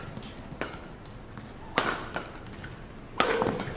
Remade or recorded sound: recorded